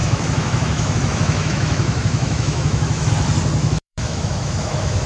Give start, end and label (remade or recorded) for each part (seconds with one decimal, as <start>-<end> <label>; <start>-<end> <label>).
0.0-3.1 remade; 3.1-3.6 recorded; 3.6-5.1 remade